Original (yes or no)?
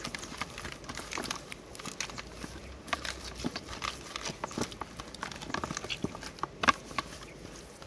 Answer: yes